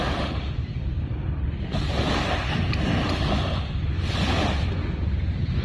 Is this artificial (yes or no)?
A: no